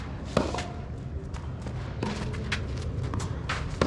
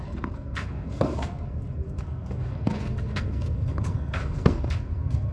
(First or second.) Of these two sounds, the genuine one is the first